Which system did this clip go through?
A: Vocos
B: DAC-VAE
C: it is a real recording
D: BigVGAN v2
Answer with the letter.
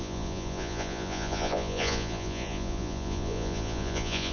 A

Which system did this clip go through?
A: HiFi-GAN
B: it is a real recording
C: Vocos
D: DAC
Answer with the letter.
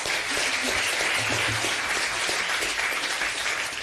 B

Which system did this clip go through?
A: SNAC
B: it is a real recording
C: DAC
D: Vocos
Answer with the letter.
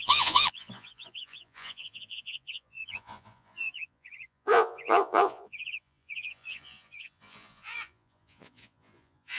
D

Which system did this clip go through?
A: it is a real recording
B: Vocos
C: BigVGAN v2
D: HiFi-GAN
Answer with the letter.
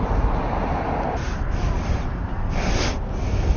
A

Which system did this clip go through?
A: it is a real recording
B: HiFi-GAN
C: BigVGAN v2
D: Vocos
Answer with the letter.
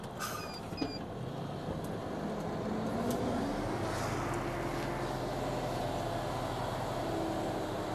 A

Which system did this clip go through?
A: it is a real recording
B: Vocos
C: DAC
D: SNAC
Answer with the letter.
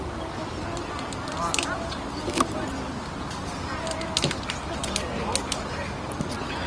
A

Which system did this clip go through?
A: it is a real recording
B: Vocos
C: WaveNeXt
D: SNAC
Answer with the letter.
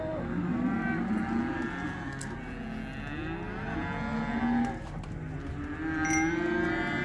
A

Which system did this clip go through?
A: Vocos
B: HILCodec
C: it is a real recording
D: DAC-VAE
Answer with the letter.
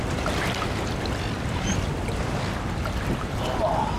C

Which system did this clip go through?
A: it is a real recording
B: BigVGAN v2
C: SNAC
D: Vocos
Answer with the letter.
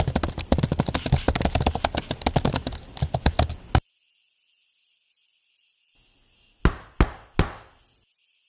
A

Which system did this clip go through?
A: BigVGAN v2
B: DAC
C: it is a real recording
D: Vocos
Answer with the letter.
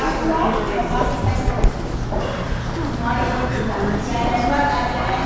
C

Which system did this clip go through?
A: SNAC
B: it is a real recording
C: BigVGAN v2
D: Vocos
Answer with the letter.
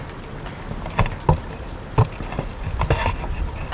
B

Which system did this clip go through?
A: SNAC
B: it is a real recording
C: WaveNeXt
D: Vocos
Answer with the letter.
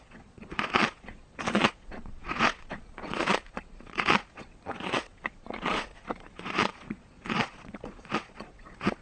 D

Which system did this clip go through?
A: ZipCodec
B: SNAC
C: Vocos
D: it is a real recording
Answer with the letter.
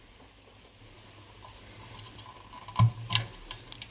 D